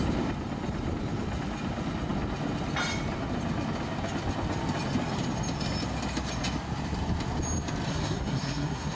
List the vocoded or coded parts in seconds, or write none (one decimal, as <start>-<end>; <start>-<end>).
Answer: 7.9-9.0